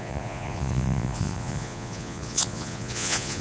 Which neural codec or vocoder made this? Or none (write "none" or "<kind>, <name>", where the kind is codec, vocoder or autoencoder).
vocoder, Vocos